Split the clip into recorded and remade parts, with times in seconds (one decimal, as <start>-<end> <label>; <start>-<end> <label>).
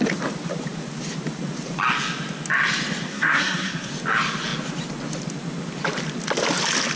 0.0-3.1 recorded; 3.1-3.9 remade; 3.9-7.0 recorded